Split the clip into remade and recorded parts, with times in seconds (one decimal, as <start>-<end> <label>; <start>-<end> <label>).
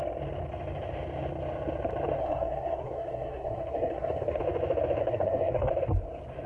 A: 0.0-2.2 recorded; 2.2-4.4 remade; 4.4-5.0 recorded; 5.0-5.7 remade; 5.7-6.5 recorded